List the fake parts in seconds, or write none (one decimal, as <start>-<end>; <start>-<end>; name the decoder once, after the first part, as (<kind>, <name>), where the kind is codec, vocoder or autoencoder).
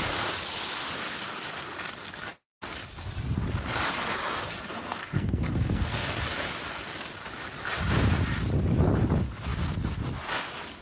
4.7-6.3 (codec, SNAC)